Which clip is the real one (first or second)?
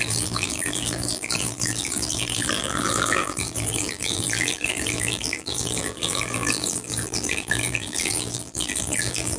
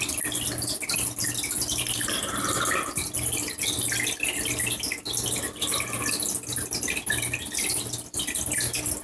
second